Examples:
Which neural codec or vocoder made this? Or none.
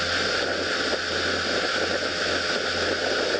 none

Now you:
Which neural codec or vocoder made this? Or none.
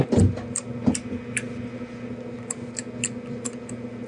none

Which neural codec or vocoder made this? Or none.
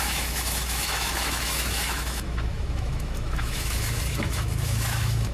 autoencoder, DAC-VAE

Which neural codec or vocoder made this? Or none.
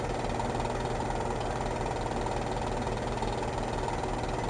none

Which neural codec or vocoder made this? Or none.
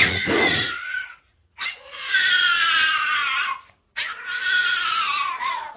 vocoder, Vocos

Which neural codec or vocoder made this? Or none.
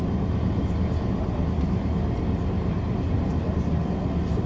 none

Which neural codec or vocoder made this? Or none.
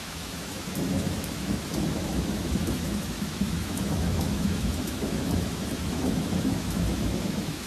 autoencoder, DAC-VAE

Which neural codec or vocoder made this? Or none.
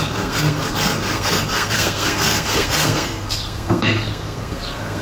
codec, SNAC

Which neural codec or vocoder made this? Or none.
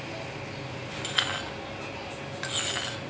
none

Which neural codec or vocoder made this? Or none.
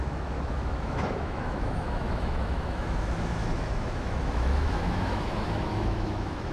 autoencoder, DAC-VAE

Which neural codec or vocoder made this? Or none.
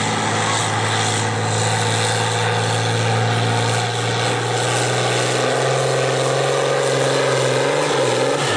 none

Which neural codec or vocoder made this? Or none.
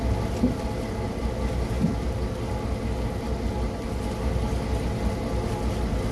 none